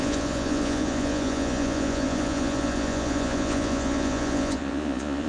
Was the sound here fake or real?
fake